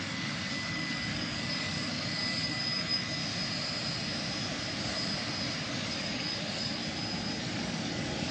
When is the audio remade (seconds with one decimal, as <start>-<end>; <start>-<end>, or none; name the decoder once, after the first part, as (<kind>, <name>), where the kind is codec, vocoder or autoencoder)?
0.0-3.2 (codec, DAC); 5.7-6.8; 7.4-8.3